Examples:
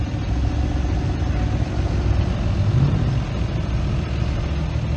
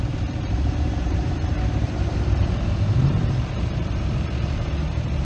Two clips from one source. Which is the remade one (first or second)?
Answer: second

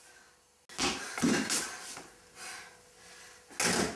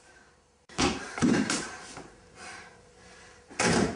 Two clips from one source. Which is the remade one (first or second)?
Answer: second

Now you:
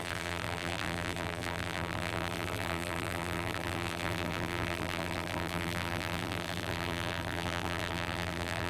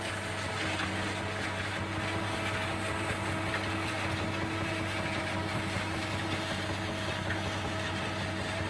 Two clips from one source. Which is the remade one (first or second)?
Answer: first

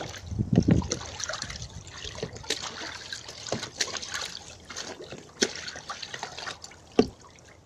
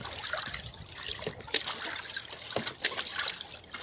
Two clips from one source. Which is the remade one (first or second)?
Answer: second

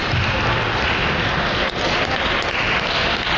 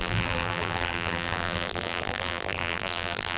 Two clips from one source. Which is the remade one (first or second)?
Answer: second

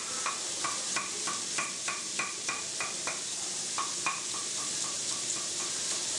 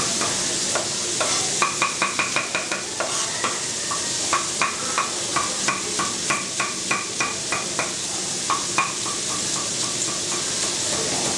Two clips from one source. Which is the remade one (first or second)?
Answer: first